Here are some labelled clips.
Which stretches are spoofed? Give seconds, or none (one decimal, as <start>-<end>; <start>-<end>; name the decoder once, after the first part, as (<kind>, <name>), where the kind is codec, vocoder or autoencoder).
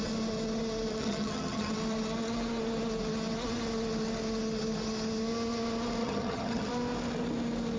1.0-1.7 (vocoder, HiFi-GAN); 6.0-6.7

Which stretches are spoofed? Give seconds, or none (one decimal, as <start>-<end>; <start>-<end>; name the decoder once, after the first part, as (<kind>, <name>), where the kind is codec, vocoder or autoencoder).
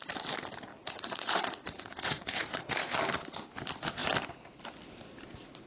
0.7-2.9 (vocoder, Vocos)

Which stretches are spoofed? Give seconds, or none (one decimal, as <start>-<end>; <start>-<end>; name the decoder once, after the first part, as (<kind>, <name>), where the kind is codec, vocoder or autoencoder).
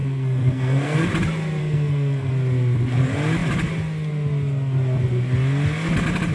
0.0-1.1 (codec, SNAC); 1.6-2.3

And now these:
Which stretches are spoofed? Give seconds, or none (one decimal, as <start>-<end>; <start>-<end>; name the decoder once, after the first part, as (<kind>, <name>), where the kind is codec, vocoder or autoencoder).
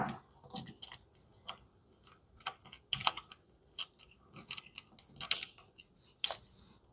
none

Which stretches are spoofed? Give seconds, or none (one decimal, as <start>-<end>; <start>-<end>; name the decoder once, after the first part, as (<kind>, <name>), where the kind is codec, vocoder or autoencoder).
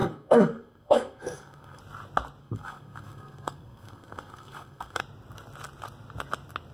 0.0-1.8 (codec, SNAC); 2.4-5.0